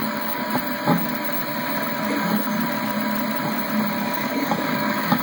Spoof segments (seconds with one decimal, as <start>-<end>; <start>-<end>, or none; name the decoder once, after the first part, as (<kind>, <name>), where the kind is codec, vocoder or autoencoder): 0.0-0.5 (codec, DAC); 4.0-5.2

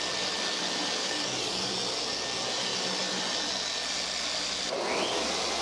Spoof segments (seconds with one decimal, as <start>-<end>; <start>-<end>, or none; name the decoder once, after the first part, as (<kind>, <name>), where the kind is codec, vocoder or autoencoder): 1.0-1.7 (codec, DAC)

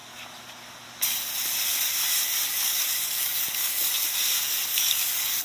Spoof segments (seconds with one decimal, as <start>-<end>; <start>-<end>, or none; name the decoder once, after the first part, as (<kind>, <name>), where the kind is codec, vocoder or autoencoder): 2.5-3.9 (codec, DAC); 4.7-5.4